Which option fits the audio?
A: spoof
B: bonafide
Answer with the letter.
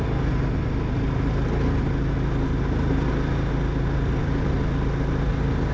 B